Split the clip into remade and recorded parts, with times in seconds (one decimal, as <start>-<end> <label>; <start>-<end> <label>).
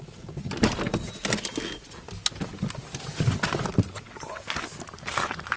0.0-5.6 recorded